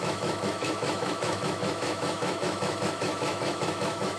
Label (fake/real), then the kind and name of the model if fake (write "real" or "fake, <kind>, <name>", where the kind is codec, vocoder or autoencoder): fake, autoencoder, DAC-VAE